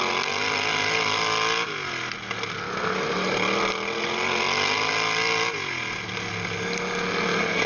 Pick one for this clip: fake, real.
real